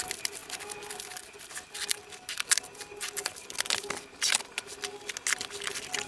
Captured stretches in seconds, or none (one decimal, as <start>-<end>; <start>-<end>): 0.0-6.1